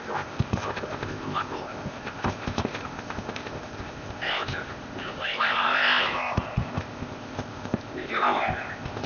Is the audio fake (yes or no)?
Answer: yes